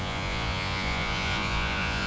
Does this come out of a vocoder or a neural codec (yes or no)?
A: yes